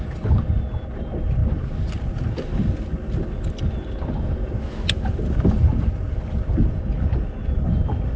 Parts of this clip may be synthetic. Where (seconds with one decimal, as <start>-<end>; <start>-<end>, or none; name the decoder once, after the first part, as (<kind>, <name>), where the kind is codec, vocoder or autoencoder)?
none